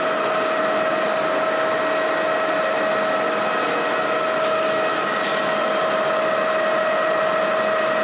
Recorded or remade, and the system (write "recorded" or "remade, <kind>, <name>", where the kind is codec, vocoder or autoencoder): recorded